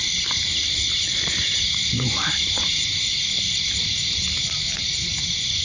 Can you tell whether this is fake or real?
fake